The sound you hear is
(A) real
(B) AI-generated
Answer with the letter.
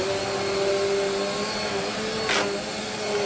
A